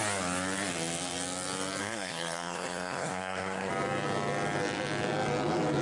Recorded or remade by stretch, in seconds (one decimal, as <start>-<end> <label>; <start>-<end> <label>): 0.0-1.8 recorded; 1.8-3.7 remade; 3.7-5.8 recorded